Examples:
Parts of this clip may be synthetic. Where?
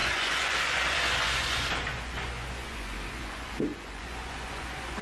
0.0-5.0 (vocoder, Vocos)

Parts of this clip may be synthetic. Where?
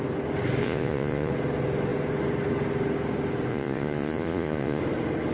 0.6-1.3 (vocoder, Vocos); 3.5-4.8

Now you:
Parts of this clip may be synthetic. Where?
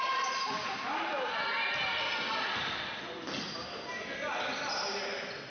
none